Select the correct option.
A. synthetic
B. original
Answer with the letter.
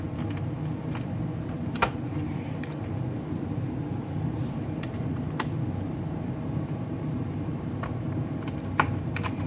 A